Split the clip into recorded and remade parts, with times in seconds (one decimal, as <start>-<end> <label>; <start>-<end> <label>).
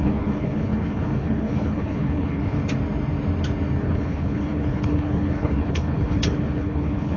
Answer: 0.0-2.6 remade; 2.6-3.8 recorded; 3.8-7.2 remade